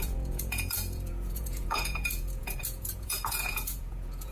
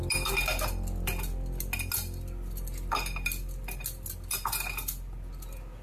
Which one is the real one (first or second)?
second